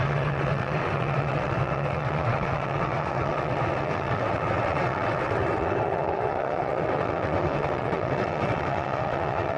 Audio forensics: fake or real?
fake